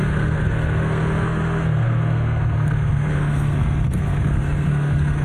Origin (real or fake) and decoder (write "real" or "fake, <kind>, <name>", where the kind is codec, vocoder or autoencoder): fake, codec, SNAC